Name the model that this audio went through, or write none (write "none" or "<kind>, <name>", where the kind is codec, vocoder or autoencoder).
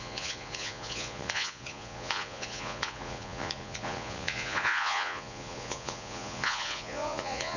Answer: vocoder, Vocos